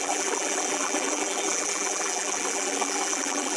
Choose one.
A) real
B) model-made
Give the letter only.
B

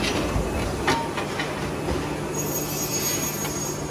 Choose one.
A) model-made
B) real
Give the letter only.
B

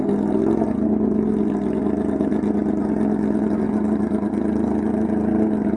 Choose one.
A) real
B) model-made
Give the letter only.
A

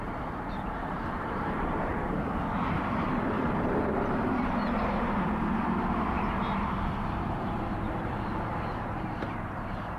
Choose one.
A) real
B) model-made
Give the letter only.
B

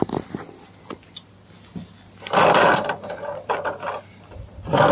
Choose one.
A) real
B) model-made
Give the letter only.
B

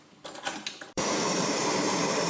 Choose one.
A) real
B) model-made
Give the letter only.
B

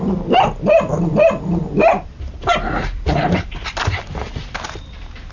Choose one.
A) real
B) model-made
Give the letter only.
B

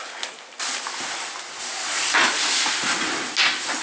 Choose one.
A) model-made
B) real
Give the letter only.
B